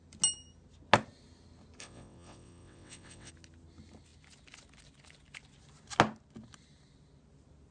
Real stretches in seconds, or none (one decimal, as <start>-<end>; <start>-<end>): 0.0-1.8; 3.3-7.7